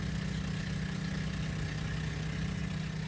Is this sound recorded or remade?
recorded